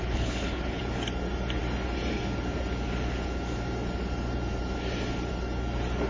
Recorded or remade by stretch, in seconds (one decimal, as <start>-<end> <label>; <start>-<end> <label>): 0.0-0.8 remade; 0.8-6.1 recorded